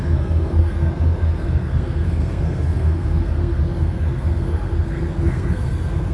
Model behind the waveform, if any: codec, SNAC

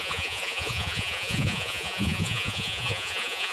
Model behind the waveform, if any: vocoder, Vocos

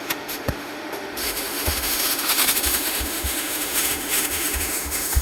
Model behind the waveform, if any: autoencoder, DAC-VAE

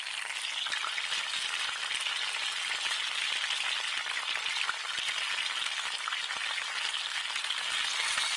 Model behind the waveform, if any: none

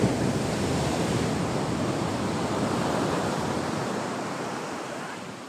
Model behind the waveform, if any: vocoder, BigVGAN v2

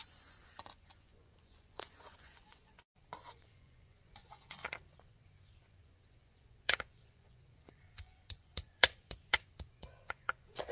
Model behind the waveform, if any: vocoder, Vocos